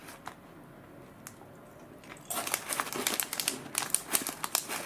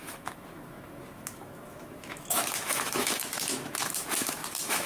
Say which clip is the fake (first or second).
second